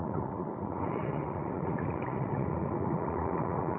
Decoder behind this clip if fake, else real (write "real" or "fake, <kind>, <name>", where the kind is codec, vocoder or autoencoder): fake, vocoder, Vocos